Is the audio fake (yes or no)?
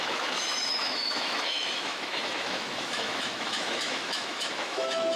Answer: yes